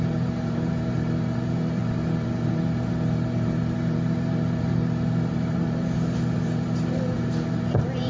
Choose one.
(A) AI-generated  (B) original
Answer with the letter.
A